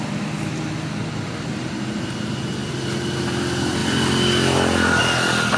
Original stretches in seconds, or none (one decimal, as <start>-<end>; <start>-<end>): 0.0-5.6